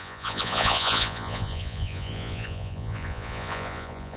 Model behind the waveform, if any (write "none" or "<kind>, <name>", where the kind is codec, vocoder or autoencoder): vocoder, Vocos